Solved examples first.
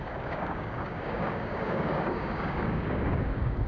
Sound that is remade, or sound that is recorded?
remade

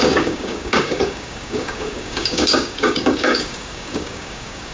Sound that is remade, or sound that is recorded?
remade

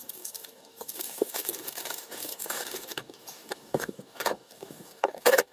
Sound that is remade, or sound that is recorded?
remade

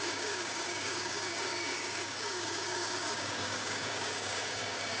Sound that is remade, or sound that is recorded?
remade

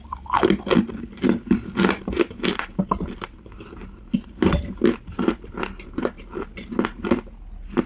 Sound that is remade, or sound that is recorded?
recorded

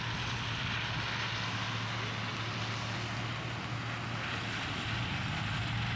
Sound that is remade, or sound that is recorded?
recorded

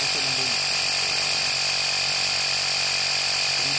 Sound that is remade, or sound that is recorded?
recorded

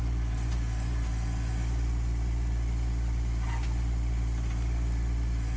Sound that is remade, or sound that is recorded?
recorded